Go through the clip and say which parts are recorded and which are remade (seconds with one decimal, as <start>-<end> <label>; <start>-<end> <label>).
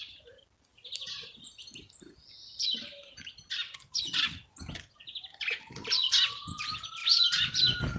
0.0-8.0 recorded